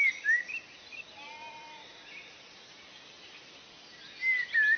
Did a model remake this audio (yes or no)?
no